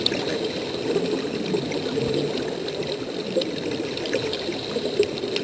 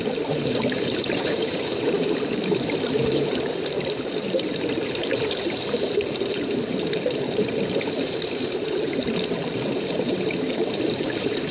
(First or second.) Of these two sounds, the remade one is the second